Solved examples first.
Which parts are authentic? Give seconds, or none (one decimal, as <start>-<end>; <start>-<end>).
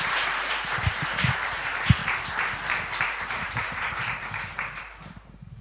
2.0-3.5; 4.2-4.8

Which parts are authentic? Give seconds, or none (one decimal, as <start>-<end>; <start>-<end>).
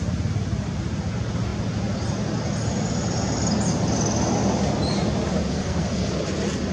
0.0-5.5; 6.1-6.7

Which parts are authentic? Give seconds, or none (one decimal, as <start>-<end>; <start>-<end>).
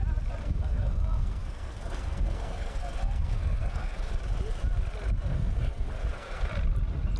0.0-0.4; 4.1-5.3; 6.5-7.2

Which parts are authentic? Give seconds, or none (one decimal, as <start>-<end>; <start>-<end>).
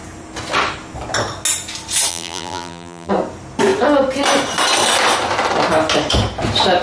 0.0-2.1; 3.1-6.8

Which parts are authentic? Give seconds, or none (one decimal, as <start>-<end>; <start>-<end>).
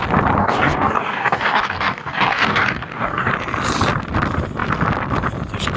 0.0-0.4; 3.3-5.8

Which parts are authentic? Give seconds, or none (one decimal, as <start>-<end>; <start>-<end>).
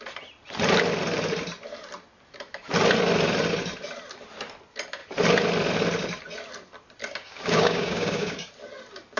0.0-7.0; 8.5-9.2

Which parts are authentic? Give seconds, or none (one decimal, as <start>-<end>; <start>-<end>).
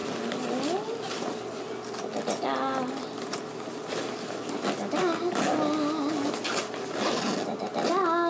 0.0-8.3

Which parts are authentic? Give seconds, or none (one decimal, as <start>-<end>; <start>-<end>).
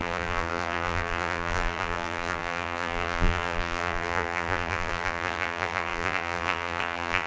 none